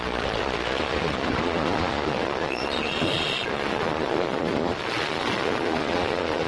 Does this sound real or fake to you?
fake